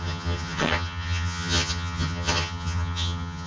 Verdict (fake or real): fake